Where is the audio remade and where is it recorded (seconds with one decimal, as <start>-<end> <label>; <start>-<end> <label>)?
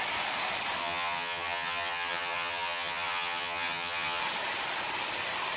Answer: 0.0-0.8 recorded; 0.8-4.2 remade; 4.2-5.6 recorded